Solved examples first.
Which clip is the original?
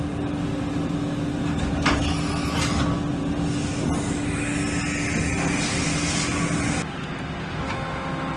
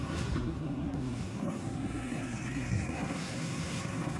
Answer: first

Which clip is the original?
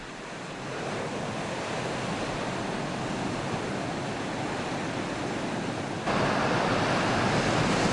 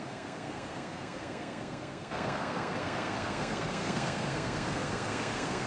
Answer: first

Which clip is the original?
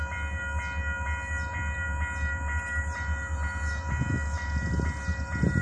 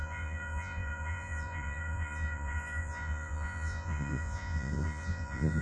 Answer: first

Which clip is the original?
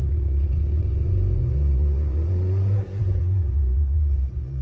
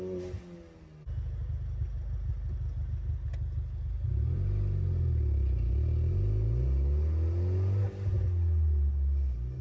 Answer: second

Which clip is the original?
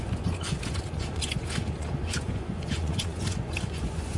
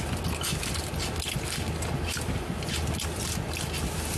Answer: second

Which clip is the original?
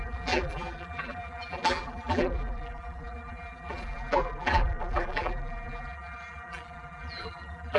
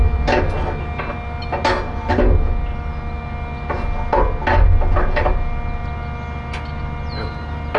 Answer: second